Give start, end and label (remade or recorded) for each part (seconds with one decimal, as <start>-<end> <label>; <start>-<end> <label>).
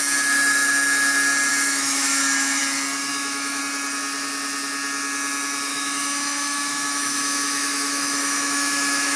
0.0-1.5 recorded; 1.5-2.6 remade; 2.6-3.1 recorded; 3.1-3.6 remade; 3.6-5.7 recorded; 5.7-9.2 remade